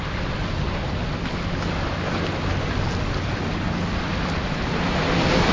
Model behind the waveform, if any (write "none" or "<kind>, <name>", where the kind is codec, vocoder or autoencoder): none